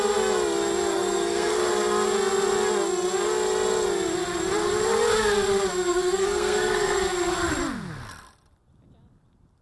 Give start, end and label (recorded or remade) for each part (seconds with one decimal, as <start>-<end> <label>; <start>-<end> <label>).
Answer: 0.0-0.9 recorded; 0.9-1.7 remade; 1.7-5.9 recorded; 5.9-7.0 remade; 7.0-9.6 recorded